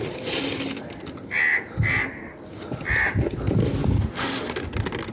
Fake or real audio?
real